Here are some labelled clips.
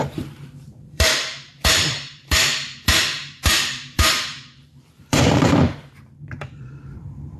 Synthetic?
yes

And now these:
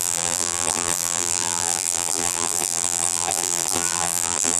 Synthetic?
yes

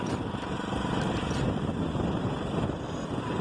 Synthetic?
no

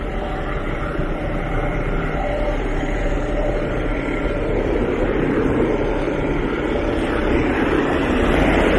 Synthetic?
yes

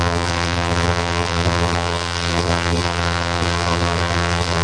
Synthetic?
yes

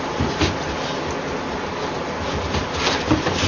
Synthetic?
no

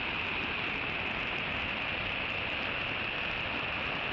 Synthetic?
no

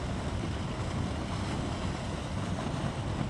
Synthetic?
no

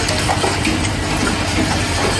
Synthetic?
no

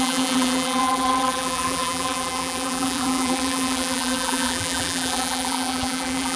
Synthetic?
yes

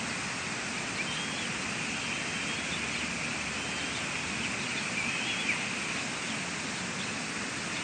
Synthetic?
no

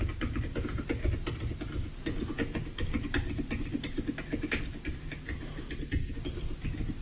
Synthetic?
no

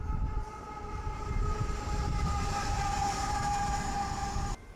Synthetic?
yes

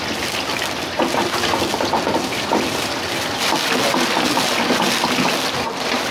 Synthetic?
no